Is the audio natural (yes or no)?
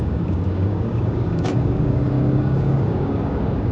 no